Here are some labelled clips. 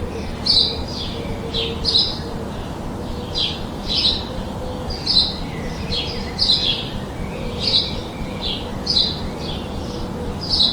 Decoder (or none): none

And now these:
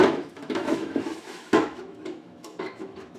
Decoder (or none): autoencoder, DAC-VAE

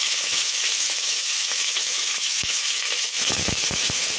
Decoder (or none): autoencoder, DAC-VAE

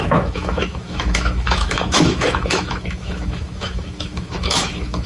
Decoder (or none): autoencoder, DAC-VAE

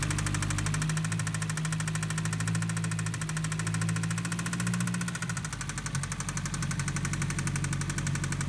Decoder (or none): none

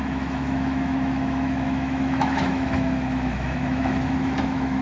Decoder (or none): autoencoder, DAC-VAE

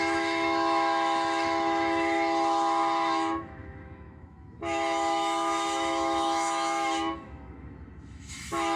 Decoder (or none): autoencoder, DAC-VAE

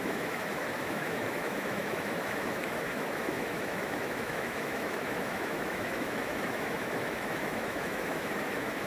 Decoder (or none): autoencoder, DAC-VAE